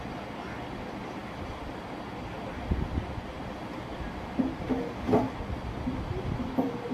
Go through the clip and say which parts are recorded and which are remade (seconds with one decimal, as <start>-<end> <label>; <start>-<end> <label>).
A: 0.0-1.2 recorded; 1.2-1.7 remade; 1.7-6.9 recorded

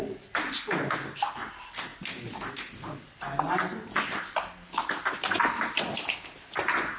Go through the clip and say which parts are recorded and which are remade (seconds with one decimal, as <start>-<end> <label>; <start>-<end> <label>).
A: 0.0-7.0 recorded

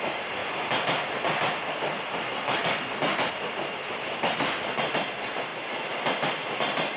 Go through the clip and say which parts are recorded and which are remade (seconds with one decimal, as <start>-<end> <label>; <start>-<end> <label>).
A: 0.0-0.4 remade; 0.4-3.3 recorded; 3.3-5.5 remade; 5.5-7.0 recorded